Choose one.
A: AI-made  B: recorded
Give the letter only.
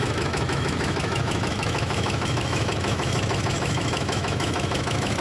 A